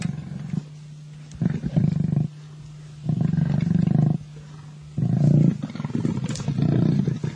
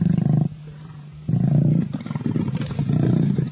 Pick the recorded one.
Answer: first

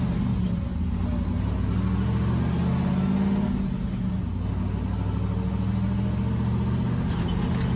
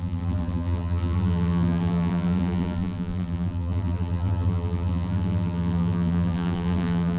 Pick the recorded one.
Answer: first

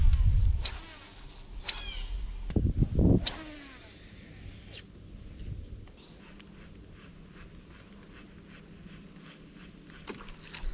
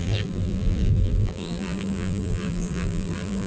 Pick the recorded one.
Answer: first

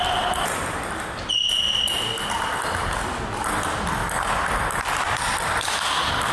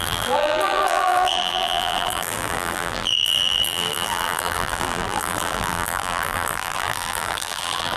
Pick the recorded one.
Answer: first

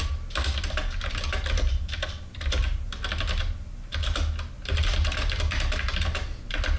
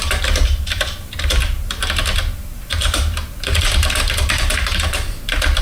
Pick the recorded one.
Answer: first